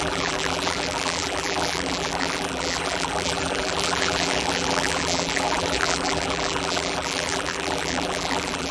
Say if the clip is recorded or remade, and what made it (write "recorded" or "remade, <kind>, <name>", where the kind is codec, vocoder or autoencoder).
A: remade, vocoder, BigVGAN v2